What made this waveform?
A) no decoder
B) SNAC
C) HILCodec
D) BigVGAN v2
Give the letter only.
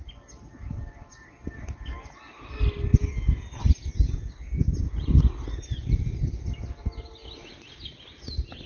A